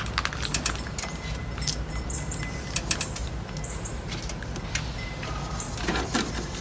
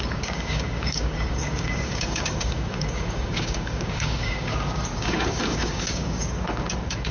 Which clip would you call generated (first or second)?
second